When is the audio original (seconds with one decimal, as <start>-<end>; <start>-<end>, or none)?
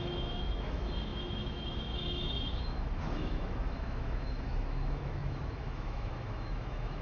none